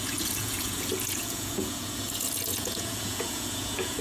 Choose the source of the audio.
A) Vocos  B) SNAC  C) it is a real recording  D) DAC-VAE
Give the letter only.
A